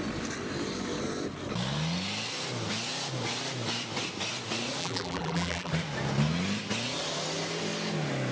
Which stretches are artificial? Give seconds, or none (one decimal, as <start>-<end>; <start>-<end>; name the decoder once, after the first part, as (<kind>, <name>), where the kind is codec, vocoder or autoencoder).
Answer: 4.8-5.7 (vocoder, BigVGAN v2)